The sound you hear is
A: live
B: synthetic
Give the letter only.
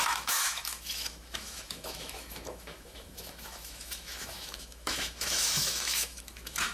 B